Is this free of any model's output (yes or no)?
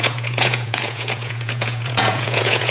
no